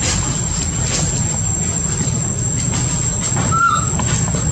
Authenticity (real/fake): real